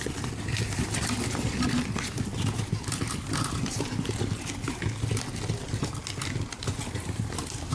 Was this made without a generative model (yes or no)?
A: yes